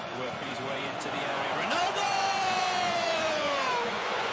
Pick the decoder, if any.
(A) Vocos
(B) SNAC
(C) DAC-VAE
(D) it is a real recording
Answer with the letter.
A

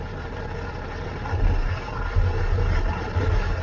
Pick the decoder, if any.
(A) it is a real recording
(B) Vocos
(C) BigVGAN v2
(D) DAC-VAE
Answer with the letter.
A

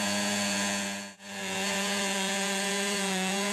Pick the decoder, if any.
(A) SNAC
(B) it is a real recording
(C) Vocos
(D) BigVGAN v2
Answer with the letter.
C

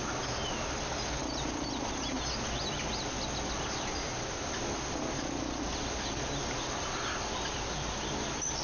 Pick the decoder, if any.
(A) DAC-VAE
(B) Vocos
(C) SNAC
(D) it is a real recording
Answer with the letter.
D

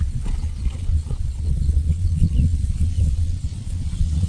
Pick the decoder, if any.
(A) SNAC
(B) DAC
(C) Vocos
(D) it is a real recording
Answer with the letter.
C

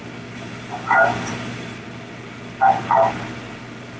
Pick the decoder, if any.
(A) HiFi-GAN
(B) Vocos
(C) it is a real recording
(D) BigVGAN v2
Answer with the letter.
C